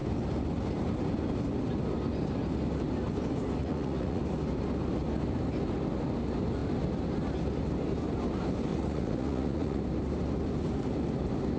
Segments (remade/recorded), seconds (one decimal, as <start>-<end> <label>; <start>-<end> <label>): 0.0-3.6 recorded; 3.6-4.2 remade; 4.2-8.7 recorded; 8.7-9.8 remade; 9.8-11.6 recorded